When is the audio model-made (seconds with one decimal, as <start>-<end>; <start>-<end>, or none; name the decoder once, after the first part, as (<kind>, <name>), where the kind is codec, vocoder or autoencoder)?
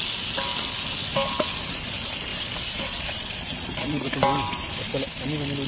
2.3-4.1 (vocoder, Vocos)